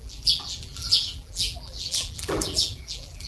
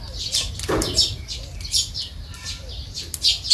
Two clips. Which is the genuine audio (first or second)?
second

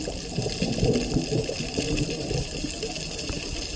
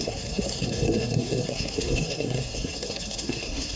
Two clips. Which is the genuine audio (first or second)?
first